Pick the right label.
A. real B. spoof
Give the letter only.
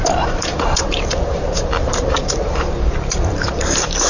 B